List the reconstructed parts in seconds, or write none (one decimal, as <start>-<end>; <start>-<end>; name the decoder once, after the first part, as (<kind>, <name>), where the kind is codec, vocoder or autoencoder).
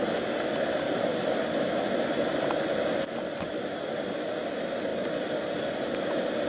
none